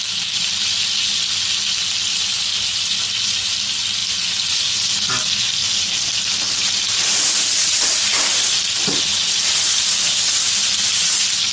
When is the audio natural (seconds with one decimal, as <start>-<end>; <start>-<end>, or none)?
0.0-11.5